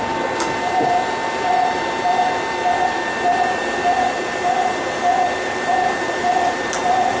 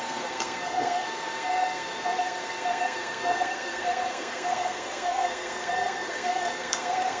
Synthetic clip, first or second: second